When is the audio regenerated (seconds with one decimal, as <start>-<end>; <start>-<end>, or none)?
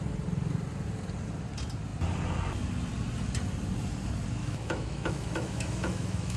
4.4-6.4